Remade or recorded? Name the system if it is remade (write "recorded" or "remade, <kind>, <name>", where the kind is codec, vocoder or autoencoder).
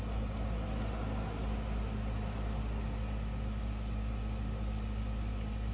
recorded